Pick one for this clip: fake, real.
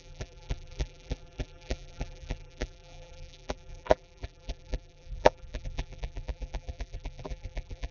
fake